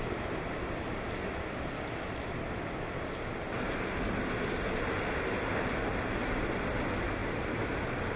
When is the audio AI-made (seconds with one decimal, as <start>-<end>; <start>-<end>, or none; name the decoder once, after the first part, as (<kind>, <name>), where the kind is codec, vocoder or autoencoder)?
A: 7.2-8.2 (vocoder, BigVGAN v2)